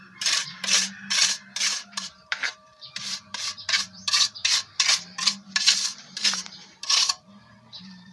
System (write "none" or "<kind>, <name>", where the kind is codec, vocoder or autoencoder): vocoder, BigVGAN v2